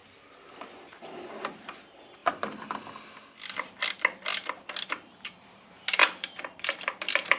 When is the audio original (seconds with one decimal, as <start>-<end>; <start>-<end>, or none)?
0.0-1.3; 2.2-4.9

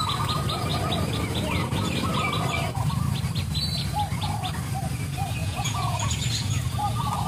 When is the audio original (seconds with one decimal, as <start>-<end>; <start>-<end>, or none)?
0.0-5.4; 6.1-7.3

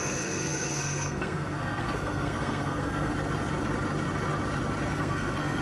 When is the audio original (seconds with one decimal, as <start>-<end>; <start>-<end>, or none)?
3.1-4.9

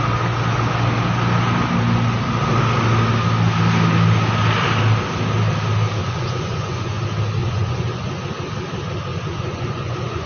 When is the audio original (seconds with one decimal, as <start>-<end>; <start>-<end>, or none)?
0.0-6.0; 7.0-7.4; 8.2-9.1

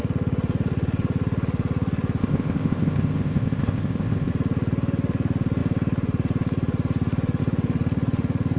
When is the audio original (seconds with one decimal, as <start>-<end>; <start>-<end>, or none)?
0.0-2.2; 4.3-8.6

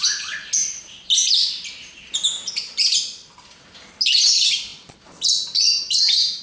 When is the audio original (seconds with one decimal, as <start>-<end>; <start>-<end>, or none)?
0.0-6.4

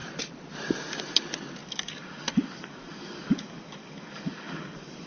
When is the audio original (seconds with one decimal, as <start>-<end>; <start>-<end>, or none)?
0.0-1.6